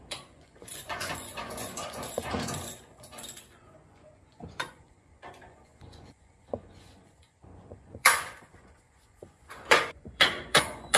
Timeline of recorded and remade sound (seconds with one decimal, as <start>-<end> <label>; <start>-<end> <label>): 0.0-11.0 remade